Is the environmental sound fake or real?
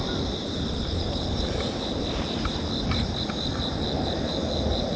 fake